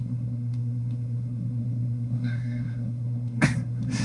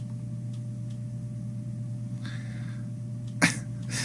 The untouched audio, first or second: second